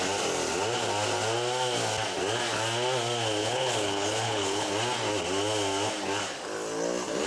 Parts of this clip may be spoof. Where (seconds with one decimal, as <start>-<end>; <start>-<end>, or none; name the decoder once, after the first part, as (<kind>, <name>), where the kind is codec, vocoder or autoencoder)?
3.4-4.7 (codec, HILCodec)